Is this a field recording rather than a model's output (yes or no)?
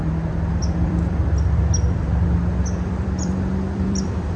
no